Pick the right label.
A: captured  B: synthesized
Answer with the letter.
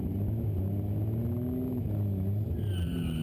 A